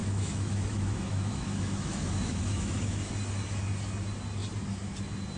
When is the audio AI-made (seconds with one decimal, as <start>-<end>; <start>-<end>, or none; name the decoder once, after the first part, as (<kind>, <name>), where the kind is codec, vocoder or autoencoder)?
0.0-3.1 (autoencoder, DAC-VAE)